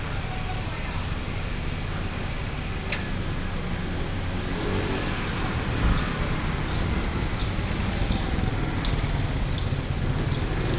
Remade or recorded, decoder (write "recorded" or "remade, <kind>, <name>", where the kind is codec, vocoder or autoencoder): recorded